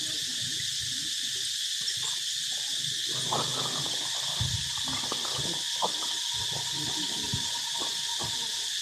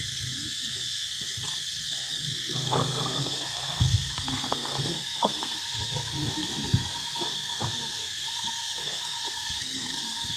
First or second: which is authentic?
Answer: first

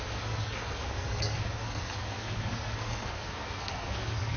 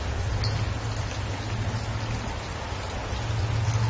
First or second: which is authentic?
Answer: second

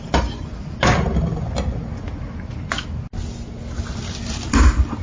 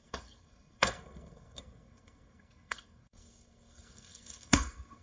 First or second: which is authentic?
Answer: first